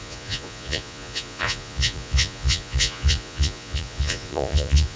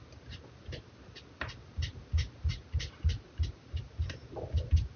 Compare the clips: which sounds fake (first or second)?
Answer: first